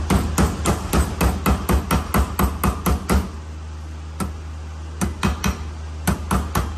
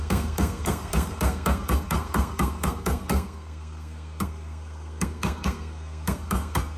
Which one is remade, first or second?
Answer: second